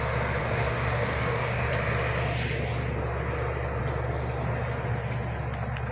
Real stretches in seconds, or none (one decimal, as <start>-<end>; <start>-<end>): 0.0-0.4; 1.7-5.9